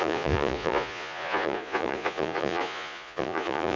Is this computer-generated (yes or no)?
yes